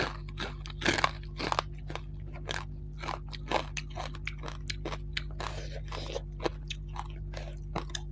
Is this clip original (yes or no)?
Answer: yes